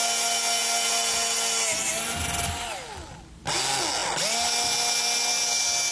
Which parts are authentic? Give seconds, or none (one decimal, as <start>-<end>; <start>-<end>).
0.0-5.9

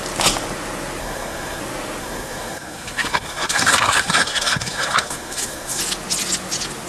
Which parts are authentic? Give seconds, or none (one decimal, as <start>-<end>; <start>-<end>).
0.0-1.0; 1.6-2.0; 5.8-6.9